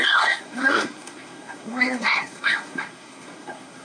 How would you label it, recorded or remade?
remade